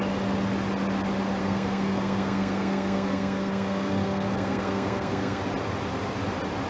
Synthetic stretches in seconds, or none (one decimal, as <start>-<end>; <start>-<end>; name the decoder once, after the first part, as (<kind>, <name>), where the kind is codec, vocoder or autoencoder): 1.4-5.4 (codec, SNAC)